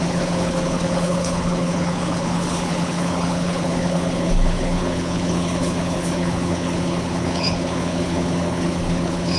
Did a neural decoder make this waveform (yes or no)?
yes